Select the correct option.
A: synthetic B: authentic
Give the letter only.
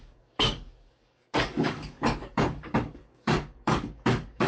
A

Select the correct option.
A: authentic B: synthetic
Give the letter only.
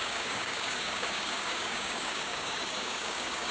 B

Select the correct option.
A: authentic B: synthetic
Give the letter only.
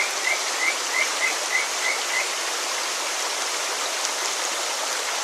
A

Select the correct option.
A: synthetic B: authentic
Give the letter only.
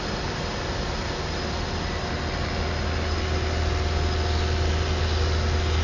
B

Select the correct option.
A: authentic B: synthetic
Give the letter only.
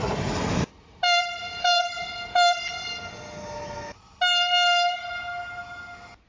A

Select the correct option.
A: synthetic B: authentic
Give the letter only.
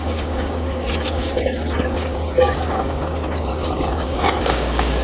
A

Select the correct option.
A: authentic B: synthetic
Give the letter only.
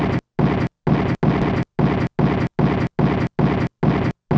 A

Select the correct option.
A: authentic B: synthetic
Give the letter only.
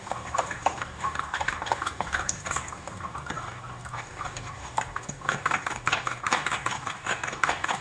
B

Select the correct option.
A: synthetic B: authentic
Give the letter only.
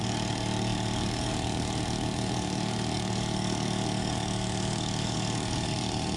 A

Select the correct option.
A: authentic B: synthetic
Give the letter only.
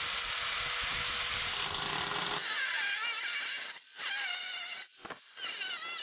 A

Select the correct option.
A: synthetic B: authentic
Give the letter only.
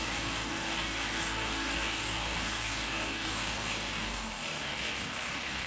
A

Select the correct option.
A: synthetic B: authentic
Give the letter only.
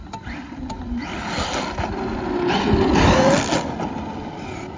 B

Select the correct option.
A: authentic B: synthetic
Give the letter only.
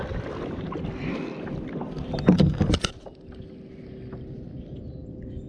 A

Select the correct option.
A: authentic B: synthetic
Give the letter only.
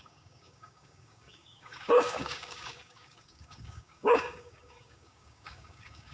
B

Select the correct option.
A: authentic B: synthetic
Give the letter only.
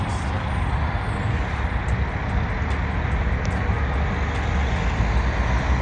A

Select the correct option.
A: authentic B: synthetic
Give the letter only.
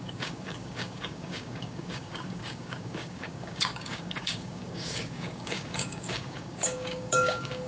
B